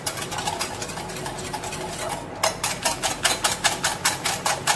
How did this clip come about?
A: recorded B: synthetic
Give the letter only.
A